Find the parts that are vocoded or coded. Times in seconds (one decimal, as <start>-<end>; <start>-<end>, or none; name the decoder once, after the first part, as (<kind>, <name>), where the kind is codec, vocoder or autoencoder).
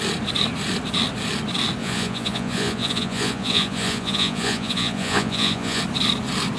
1.8-5.8 (vocoder, Vocos)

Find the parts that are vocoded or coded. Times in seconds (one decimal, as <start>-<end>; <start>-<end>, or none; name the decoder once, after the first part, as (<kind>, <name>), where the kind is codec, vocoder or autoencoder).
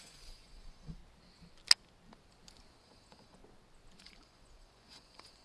0.0-1.0 (vocoder, Vocos); 2.8-3.4; 4.0-5.4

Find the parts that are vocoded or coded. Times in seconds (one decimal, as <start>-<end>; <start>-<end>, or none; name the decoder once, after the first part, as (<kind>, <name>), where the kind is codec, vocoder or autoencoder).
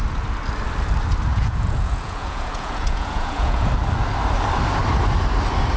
1.3-3.7 (vocoder, Vocos)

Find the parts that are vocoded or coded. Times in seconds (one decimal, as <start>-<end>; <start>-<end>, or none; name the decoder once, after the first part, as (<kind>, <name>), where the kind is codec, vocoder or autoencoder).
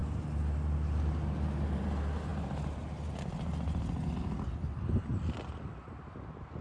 none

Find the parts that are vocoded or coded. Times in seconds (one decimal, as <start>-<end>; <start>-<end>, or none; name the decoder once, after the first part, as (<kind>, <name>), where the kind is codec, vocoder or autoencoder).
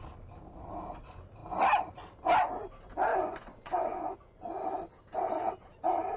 3.1-4.4 (vocoder, Vocos)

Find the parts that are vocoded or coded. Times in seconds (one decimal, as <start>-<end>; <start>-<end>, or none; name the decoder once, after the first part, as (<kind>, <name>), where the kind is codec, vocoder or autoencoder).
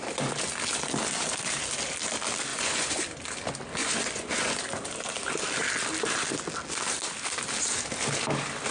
2.5-3.0 (vocoder, Vocos); 3.8-4.6